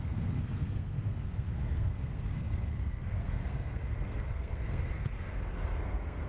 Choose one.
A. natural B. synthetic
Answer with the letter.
B